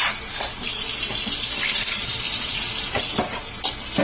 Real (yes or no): yes